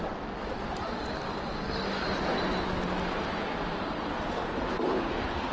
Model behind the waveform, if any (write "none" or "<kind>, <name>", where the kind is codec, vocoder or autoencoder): none